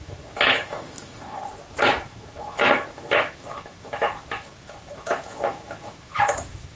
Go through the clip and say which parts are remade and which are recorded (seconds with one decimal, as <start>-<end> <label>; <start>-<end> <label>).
0.0-1.4 remade; 1.4-2.0 recorded; 2.0-6.8 remade